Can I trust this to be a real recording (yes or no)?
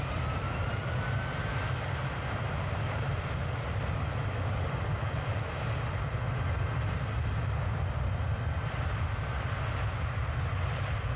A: yes